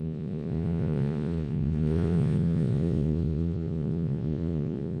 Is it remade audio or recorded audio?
remade